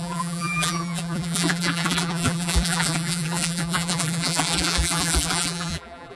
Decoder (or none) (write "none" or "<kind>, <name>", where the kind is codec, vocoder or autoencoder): vocoder, BigVGAN v2